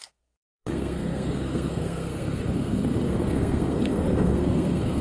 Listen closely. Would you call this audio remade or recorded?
remade